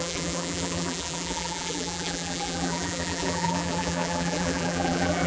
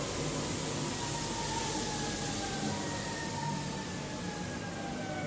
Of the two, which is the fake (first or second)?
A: first